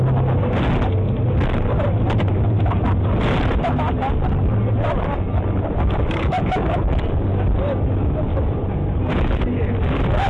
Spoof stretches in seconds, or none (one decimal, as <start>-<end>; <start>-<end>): 6.4-7.0